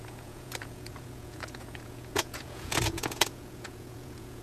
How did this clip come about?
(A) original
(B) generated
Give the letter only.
B